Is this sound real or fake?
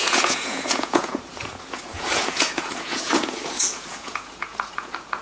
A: fake